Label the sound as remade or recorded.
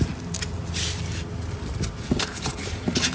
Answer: recorded